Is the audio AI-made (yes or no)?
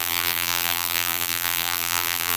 yes